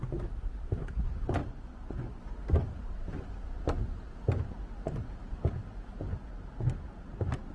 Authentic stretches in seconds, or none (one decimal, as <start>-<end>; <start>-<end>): 0.0-1.4; 2.2-7.5